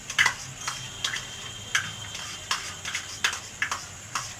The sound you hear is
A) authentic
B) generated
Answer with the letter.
A